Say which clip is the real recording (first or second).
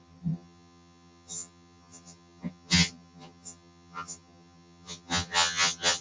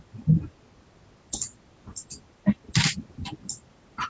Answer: second